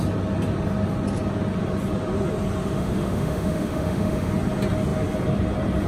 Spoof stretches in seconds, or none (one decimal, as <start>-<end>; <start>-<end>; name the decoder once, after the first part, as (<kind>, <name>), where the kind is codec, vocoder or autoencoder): 2.6-4.3 (autoencoder, DAC-VAE)